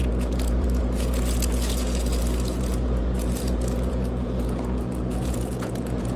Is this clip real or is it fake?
fake